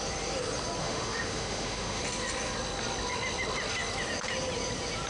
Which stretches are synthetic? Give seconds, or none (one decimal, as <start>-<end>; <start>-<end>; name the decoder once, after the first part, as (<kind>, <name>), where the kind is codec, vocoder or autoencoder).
0.8-2.0 (autoencoder, DAC-VAE)